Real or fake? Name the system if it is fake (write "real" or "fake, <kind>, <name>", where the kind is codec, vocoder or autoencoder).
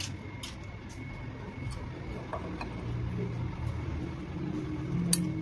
real